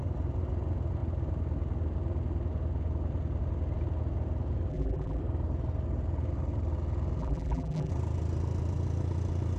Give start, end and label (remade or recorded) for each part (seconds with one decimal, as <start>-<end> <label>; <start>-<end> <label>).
0.0-4.7 recorded; 4.7-5.2 remade; 5.2-7.2 recorded; 7.2-7.9 remade; 7.9-9.6 recorded